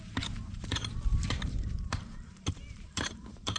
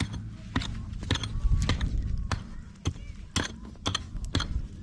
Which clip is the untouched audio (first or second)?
second